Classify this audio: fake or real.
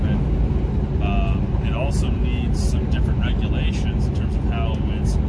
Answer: real